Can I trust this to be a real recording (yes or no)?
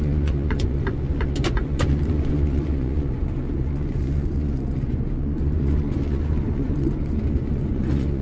no